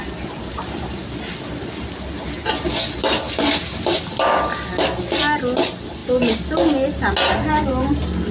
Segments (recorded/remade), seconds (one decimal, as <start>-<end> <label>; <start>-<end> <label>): 0.0-8.3 recorded